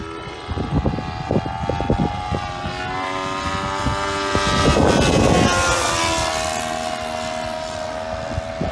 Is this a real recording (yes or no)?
yes